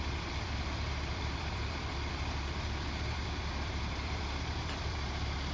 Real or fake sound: fake